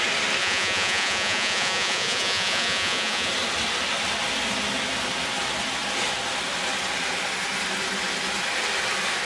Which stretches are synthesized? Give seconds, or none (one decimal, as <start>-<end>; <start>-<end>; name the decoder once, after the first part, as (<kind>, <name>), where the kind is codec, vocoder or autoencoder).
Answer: 0.4-3.3 (vocoder, Vocos)

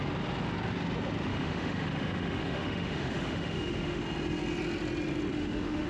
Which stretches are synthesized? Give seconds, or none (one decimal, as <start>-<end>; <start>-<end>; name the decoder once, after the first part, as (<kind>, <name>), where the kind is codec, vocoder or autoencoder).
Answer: 1.3-4.0 (autoencoder, DAC-VAE); 5.3-5.9

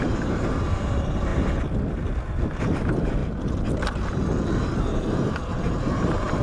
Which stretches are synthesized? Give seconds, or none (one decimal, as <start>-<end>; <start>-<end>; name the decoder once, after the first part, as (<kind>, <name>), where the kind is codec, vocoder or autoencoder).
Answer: 0.0-1.3 (vocoder, BigVGAN v2); 2.6-3.2; 4.5-6.4